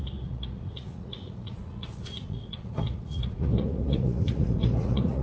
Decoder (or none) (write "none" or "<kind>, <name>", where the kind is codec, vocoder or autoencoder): vocoder, Vocos